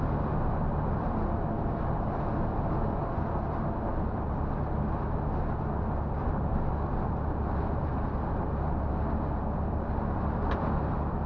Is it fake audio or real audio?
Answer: real